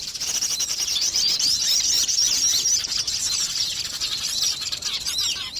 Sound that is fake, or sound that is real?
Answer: fake